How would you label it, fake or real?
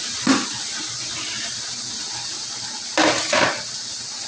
real